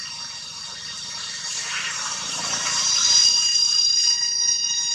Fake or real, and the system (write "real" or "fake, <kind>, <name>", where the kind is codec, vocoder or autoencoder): fake, vocoder, BigVGAN v2